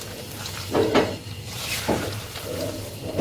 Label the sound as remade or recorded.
remade